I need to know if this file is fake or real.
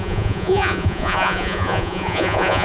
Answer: fake